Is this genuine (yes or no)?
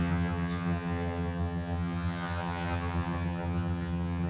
no